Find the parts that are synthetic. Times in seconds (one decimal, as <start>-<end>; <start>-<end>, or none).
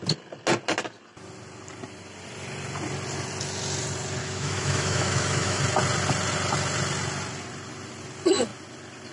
4.2-5.6